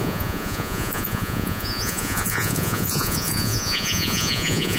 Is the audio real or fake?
fake